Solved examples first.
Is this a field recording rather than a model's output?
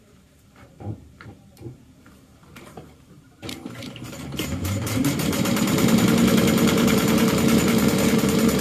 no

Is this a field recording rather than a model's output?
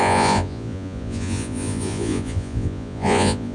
no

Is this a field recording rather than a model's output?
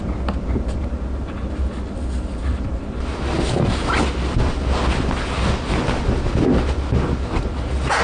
yes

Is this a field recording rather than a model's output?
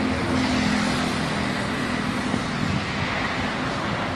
yes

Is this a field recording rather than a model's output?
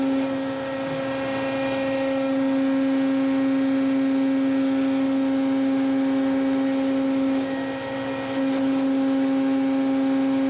yes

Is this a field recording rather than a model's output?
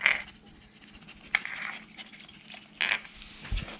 yes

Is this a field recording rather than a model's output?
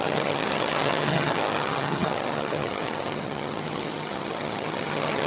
no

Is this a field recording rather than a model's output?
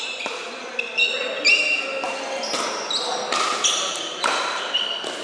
yes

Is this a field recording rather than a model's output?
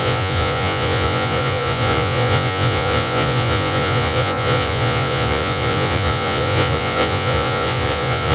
no